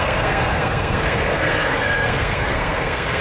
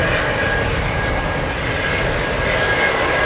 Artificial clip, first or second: first